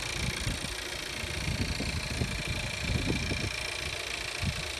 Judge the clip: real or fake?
real